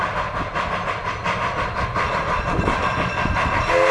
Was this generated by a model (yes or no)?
no